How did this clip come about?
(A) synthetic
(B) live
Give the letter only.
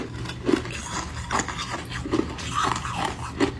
B